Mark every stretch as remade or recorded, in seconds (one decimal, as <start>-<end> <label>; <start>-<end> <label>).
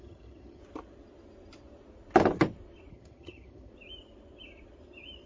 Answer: 0.0-0.6 remade; 0.6-2.9 recorded; 2.9-3.7 remade; 3.7-5.3 recorded